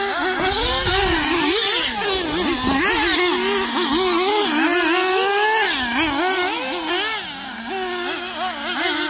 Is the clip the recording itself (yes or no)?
yes